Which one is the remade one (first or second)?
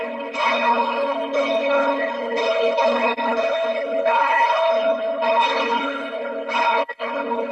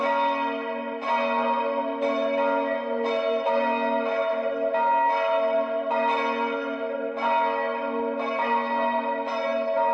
first